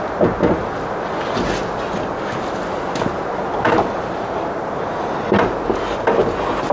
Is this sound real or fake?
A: real